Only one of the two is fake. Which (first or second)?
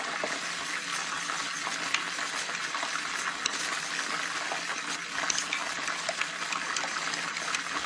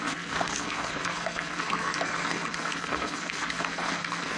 second